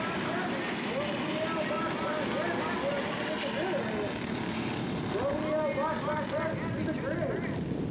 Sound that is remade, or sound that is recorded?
recorded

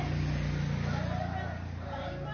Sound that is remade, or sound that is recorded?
recorded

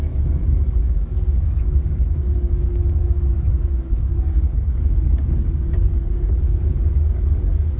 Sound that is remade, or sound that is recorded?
remade